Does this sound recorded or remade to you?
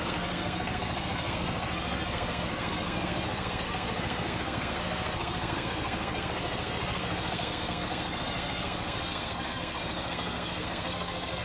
remade